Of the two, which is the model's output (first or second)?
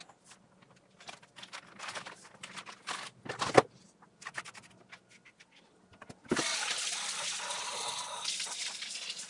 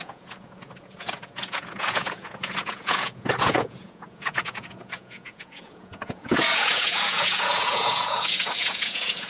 second